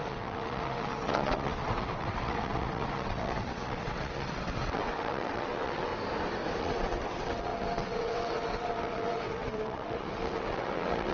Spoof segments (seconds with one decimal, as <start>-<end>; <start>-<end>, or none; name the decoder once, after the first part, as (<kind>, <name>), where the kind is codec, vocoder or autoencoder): 0.0-5.9 (vocoder, WaveNeXt); 6.6-11.1